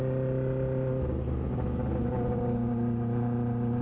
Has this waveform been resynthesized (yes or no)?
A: no